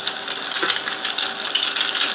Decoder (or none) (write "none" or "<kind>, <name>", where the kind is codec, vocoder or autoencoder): none